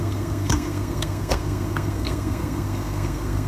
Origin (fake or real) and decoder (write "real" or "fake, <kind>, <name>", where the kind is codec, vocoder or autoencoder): fake, codec, SNAC